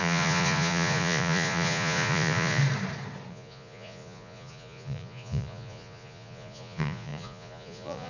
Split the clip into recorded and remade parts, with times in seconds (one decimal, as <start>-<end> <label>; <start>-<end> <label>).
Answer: 0.0-2.6 remade; 2.6-3.3 recorded; 3.3-8.1 remade